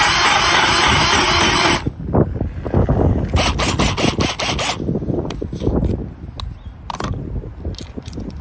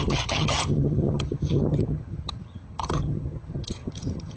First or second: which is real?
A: first